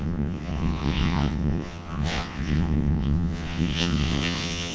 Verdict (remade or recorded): remade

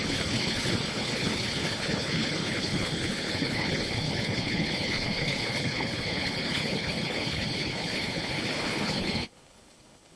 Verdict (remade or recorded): remade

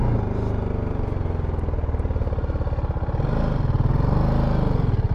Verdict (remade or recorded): recorded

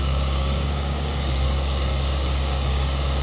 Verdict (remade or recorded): remade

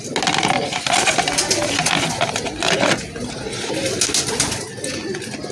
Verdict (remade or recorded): recorded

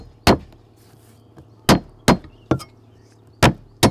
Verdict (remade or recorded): recorded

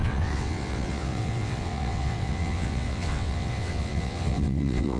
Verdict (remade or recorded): remade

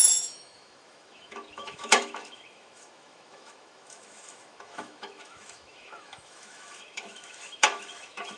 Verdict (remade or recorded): remade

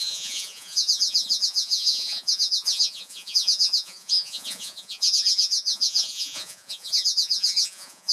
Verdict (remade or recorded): remade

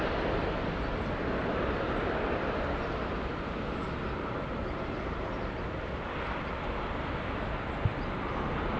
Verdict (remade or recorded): recorded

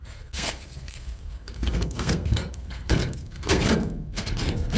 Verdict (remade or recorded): remade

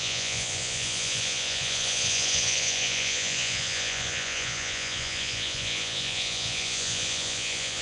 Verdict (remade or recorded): remade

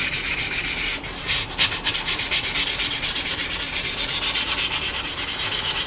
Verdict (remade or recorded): remade